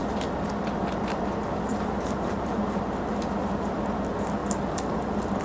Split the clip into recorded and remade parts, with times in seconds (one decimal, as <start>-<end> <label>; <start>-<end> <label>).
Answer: 0.0-1.7 recorded; 1.7-2.8 remade; 2.8-5.4 recorded